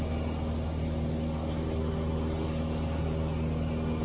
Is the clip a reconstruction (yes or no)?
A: no